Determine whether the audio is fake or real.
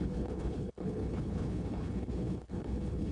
fake